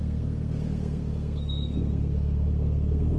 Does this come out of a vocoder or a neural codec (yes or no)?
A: yes